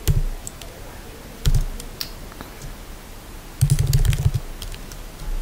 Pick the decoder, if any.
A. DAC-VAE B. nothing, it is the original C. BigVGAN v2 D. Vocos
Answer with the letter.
B